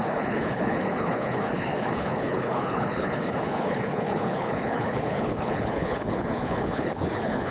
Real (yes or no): no